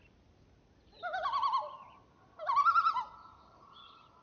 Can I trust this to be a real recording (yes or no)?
yes